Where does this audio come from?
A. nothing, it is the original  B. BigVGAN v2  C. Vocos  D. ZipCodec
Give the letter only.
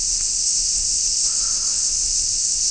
D